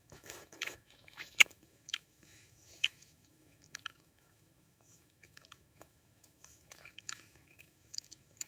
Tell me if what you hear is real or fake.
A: fake